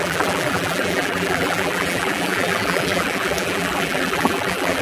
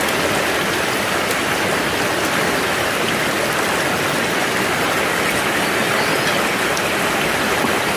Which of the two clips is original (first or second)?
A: second